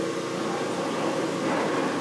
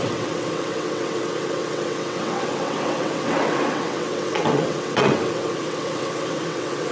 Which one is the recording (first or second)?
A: first